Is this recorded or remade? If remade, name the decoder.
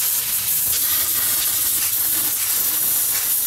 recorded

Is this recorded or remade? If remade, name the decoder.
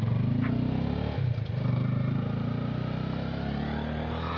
recorded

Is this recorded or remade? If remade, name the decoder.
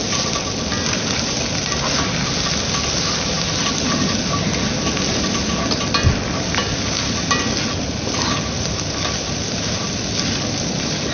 recorded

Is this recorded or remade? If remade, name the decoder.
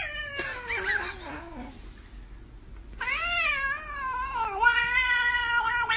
recorded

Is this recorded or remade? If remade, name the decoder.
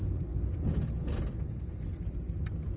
recorded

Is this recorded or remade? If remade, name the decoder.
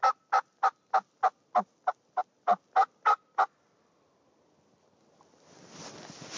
recorded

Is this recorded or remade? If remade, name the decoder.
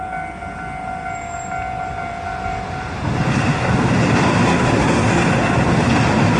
recorded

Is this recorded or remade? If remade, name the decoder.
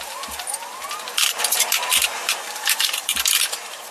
remade, vocoder, BigVGAN v2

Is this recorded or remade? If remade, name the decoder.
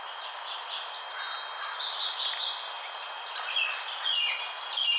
recorded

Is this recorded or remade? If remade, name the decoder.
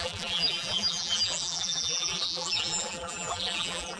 remade, vocoder, BigVGAN v2